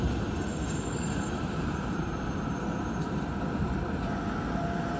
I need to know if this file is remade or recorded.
remade